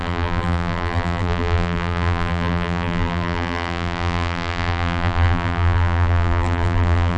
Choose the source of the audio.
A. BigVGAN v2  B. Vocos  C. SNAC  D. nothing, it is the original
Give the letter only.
A